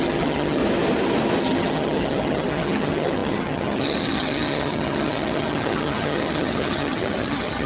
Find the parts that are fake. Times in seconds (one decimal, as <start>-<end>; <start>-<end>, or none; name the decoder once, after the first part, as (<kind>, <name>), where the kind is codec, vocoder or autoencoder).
0.0-0.6 (vocoder, HiFi-GAN); 1.4-7.7